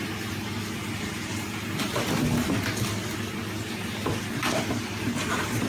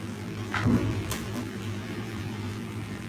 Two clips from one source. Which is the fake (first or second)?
second